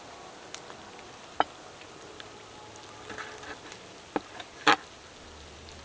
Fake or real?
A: real